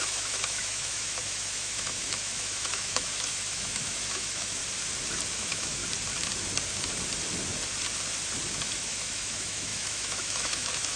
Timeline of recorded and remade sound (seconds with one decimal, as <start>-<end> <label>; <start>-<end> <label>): 0.0-4.6 remade; 4.6-5.3 recorded; 5.3-5.8 remade; 5.8-8.6 recorded; 8.6-11.0 remade